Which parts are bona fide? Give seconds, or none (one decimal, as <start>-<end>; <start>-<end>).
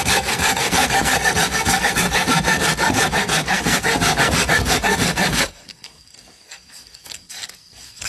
none